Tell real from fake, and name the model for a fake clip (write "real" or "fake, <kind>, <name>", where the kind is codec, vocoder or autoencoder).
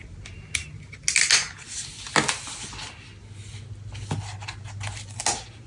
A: real